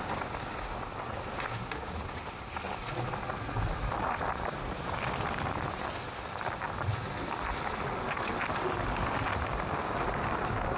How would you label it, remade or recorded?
recorded